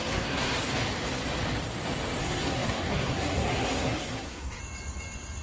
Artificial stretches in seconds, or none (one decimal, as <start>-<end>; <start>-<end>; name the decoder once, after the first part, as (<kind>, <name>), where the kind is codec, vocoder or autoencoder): 0.0-0.6 (codec, SNAC); 2.2-4.6